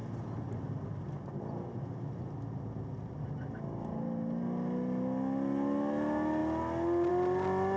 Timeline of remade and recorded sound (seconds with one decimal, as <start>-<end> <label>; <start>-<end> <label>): 0.0-7.8 recorded